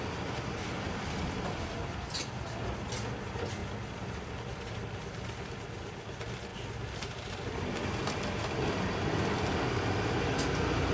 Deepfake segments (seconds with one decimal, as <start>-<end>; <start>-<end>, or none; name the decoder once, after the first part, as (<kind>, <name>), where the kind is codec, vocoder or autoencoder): none